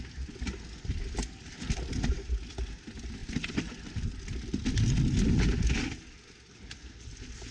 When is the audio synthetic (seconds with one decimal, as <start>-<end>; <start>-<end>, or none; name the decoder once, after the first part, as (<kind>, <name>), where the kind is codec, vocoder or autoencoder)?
none